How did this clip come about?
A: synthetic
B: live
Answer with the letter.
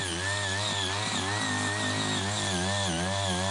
B